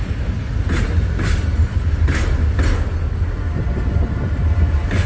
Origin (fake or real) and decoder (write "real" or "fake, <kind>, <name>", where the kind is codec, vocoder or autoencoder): real